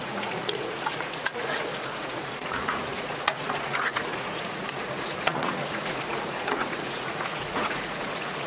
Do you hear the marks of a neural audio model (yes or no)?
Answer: yes